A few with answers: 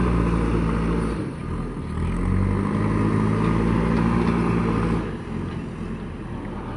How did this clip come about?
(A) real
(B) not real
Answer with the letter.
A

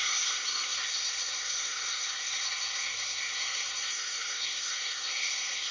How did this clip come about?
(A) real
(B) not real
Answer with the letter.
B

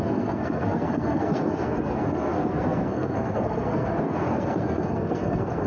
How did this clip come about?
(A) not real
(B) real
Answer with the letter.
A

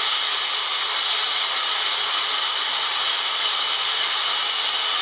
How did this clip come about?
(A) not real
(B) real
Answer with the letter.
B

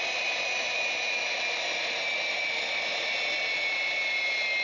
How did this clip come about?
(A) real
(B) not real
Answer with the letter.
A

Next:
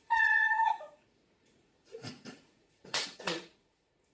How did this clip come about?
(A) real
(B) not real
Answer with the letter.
B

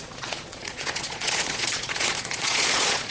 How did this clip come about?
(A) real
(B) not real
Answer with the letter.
B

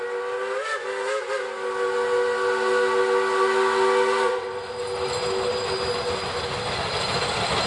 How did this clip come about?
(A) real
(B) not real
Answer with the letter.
A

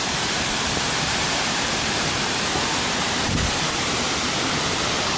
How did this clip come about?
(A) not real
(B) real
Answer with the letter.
A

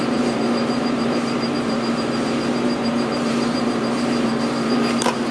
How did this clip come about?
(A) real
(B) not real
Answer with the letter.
B